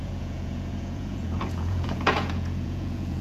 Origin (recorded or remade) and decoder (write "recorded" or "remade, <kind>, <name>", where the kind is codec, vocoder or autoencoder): remade, vocoder, Vocos